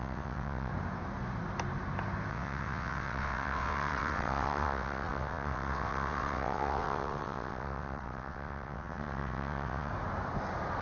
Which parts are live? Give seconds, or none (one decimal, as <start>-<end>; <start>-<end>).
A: 0.7-2.3; 9.9-10.8